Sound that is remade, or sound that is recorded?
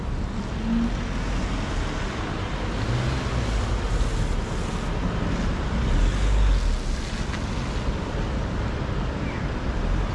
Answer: recorded